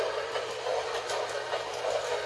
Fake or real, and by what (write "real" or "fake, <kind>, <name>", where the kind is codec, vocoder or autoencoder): real